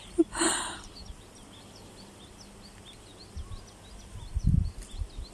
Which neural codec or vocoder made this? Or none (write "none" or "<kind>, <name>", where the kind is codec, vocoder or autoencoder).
none